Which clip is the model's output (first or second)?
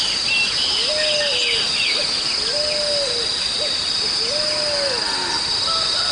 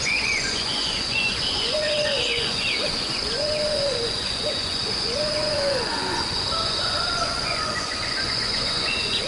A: second